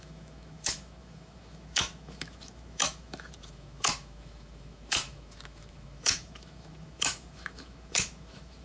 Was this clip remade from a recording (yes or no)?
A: yes